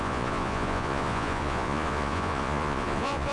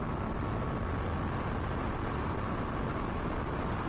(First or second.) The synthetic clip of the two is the first